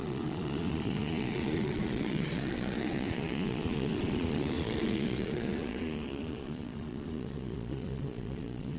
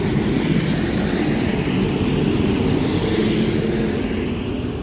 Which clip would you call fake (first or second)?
first